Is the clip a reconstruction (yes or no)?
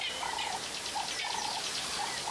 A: no